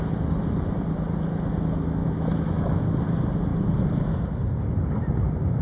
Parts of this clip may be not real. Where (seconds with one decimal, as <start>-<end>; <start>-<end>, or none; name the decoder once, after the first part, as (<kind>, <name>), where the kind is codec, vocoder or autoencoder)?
2.0-2.8 (autoencoder, DAC-VAE)